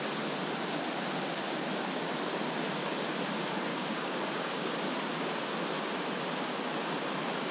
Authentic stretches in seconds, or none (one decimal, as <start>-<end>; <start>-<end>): 0.0-3.7; 4.7-7.5